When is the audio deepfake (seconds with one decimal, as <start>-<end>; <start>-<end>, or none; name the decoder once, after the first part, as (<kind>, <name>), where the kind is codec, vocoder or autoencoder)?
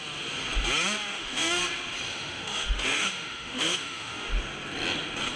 1.1-1.6 (autoencoder, DAC-VAE); 2.1-4.3